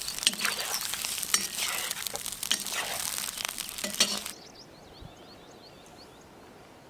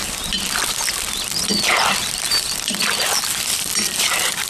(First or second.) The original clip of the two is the first